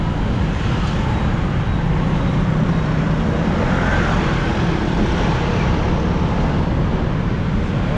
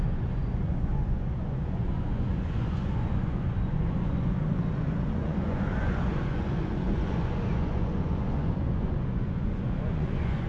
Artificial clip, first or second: second